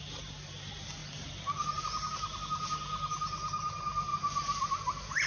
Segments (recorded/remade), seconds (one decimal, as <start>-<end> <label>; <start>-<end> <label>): 0.0-4.1 recorded; 4.1-4.7 remade; 4.7-5.3 recorded